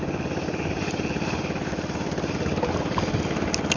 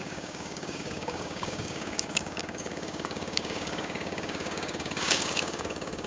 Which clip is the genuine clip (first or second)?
first